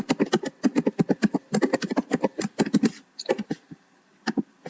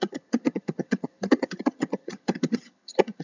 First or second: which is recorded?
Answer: first